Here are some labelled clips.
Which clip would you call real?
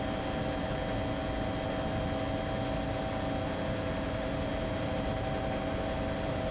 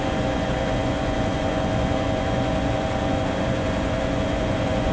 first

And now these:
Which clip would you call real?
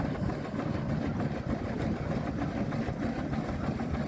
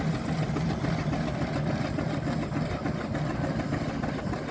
second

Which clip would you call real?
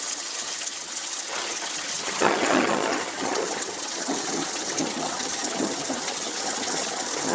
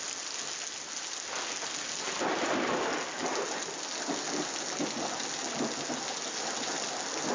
second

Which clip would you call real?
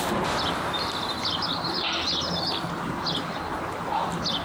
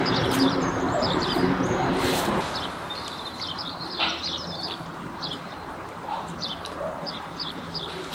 first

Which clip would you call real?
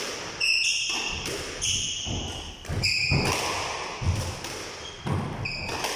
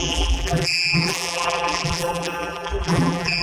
first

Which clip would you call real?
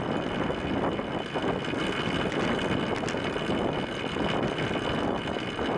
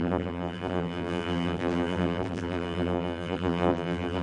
first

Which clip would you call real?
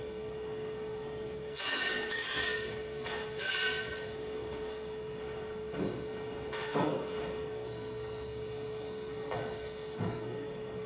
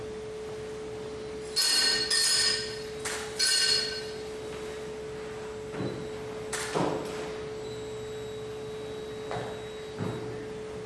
second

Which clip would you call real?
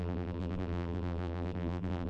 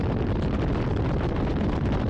second